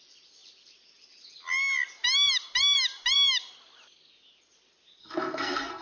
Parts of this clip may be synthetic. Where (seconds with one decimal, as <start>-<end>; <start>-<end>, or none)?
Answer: 5.0-5.8